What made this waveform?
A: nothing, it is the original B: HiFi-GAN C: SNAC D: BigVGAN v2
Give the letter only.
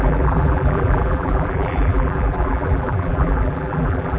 D